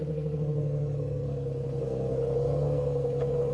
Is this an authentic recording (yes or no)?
no